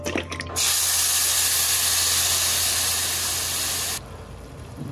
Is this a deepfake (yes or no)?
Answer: no